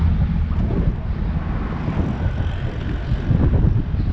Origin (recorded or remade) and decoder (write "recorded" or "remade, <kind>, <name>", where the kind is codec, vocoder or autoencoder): recorded